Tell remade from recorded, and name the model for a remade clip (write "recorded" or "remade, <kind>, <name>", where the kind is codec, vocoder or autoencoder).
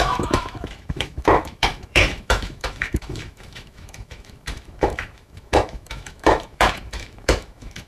remade, autoencoder, DAC-VAE